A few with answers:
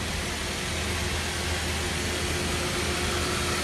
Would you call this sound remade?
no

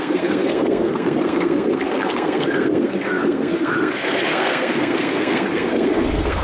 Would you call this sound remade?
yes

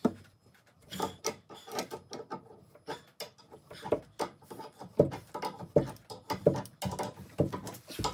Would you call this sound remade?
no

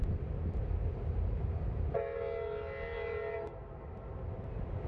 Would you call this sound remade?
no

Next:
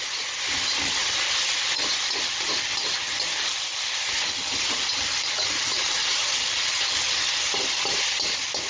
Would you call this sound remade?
no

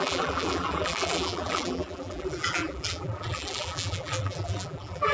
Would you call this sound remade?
yes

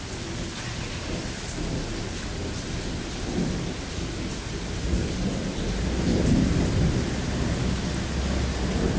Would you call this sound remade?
no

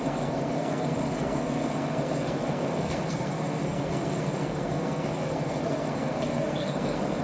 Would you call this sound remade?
yes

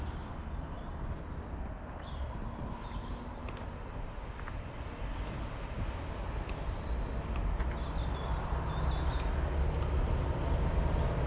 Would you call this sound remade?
no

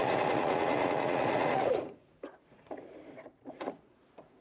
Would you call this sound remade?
yes